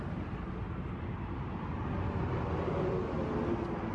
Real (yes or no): yes